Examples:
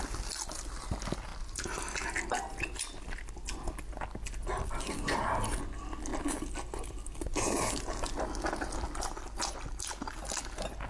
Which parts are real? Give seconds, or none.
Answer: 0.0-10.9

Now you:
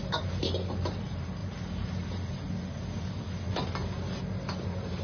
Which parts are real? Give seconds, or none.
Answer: 0.0-5.0

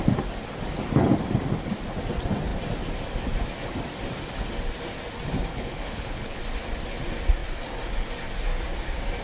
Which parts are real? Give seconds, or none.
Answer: 0.0-5.5; 6.4-9.2

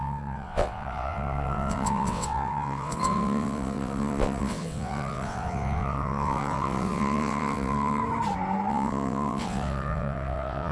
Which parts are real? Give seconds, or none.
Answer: 8.0-8.7